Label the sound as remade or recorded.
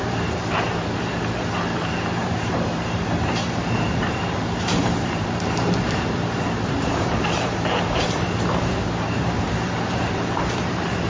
remade